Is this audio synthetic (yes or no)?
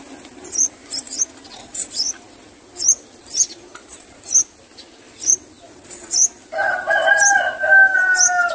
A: no